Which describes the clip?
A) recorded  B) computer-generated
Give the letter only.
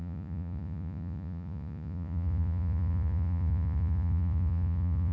B